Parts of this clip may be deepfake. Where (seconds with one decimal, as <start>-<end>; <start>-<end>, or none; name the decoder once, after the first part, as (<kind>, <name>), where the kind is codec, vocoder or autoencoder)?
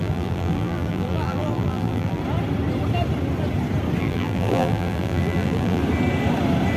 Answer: 0.0-2.2 (vocoder, BigVGAN v2); 4.0-5.8